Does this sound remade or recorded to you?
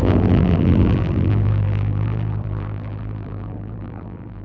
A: remade